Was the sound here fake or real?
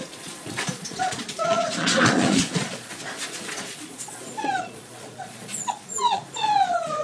fake